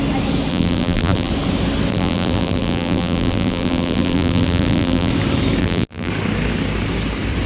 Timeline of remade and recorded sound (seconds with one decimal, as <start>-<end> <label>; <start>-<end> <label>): 0.0-0.5 recorded; 0.5-1.3 remade; 1.3-1.9 recorded; 1.9-5.1 remade; 5.1-5.6 recorded; 5.6-6.1 remade; 6.1-7.5 recorded